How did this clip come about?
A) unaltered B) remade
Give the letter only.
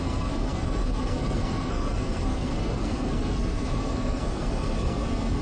B